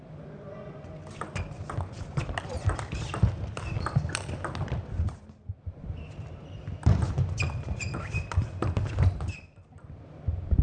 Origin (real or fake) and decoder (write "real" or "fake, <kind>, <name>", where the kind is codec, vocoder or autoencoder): real